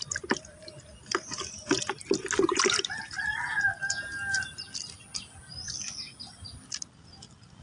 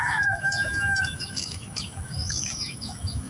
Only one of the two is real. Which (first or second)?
first